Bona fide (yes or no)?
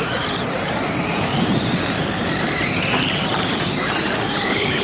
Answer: no